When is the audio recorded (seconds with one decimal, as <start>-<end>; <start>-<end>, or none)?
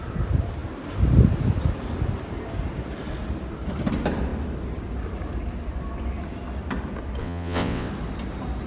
0.0-7.2; 7.9-8.7